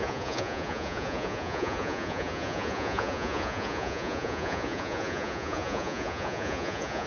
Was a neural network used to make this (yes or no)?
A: yes